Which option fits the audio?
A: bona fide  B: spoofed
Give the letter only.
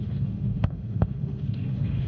B